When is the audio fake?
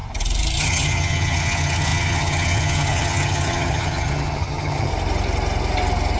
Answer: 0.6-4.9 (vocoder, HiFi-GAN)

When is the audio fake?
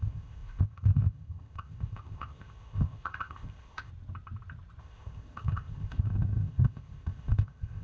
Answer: 0.0-3.9 (codec, ZipCodec); 4.8-7.8